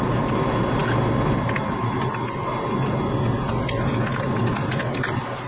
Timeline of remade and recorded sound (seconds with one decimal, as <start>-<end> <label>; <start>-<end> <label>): 0.0-5.5 recorded